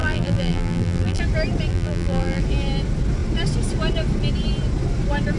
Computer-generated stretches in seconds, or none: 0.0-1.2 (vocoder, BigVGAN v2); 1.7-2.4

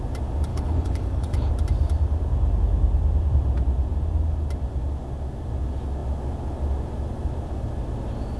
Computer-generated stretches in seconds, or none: 0.5-1.5 (codec, HILCodec)